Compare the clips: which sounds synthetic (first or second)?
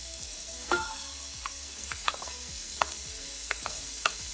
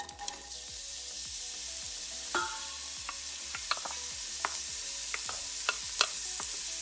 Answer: first